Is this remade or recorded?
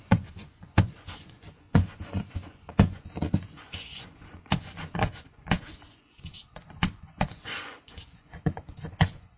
remade